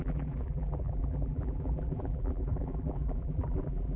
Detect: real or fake fake